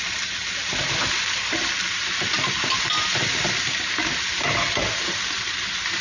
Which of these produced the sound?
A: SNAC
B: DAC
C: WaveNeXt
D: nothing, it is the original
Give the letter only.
D